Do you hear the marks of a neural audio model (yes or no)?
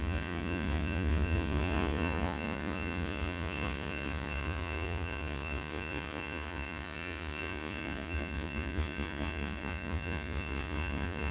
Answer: yes